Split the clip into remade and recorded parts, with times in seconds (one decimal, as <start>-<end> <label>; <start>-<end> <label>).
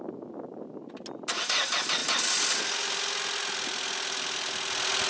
0.0-5.1 recorded